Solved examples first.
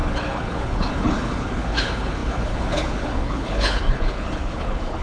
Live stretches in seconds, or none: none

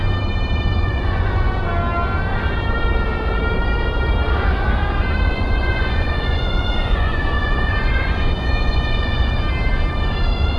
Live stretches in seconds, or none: 0.0-0.8; 1.7-5.3; 9.3-10.6

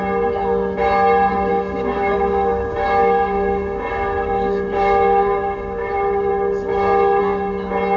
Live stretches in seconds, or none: 0.0-1.5; 6.3-6.7; 7.2-8.0